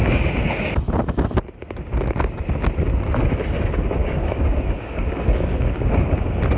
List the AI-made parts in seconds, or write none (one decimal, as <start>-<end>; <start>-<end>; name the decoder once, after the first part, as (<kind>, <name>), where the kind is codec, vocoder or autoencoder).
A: 4.0-5.9 (codec, DAC)